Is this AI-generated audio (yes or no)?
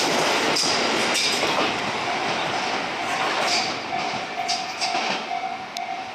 no